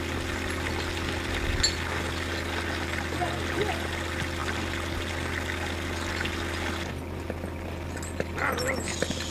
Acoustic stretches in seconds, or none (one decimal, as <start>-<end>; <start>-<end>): 0.0-9.3